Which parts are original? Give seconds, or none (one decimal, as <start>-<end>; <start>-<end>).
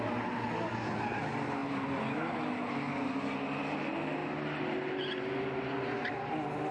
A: 0.0-6.7